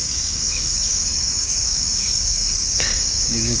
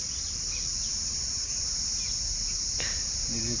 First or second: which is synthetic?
first